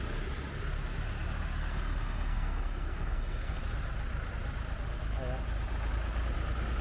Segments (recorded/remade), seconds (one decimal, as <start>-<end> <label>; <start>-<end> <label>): 0.0-1.6 recorded; 1.6-3.6 remade; 3.6-6.8 recorded